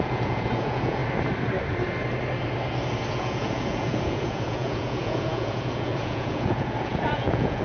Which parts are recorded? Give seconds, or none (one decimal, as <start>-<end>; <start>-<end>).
1.0-3.1